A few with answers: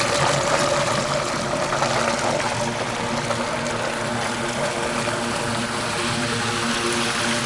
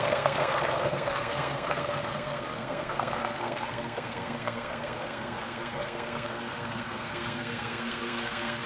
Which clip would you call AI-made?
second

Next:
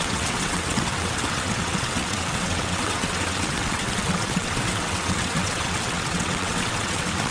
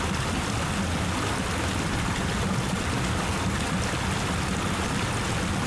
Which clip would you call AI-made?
first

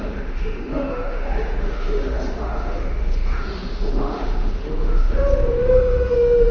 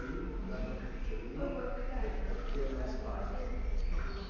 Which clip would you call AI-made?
first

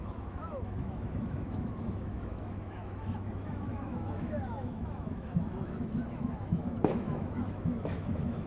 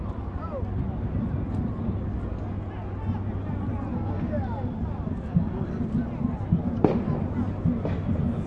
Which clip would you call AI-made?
first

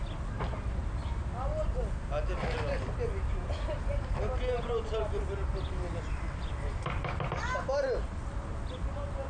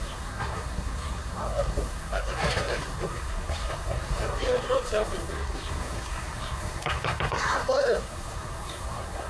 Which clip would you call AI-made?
second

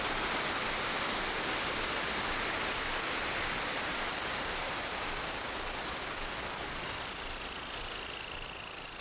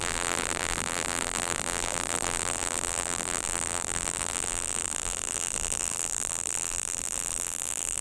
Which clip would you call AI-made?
second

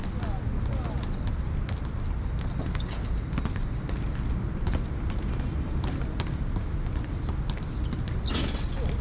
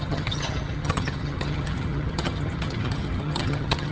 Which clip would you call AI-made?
second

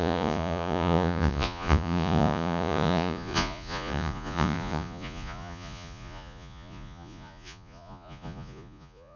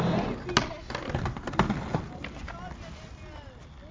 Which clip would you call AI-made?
first